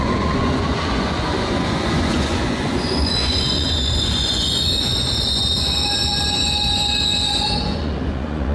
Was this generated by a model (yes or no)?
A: yes